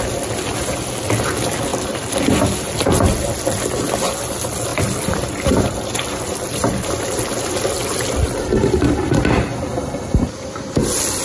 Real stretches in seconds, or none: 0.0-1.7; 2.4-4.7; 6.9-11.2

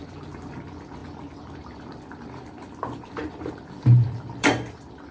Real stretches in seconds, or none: none

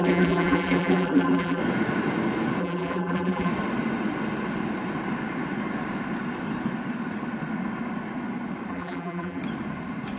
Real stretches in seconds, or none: 1.6-2.6; 3.5-8.7; 9.4-10.2

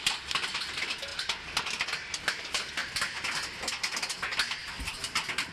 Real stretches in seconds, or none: 0.0-5.5

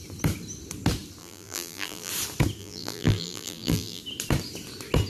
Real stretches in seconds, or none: 0.0-1.2; 2.1-2.6; 4.0-5.1